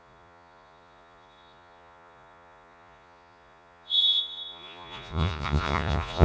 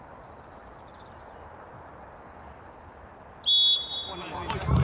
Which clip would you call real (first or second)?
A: second